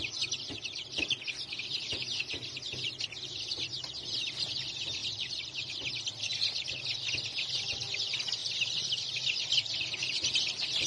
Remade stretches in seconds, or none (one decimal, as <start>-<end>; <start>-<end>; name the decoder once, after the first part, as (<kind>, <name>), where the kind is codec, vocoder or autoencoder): 5.0-6.0 (vocoder, BigVGAN v2)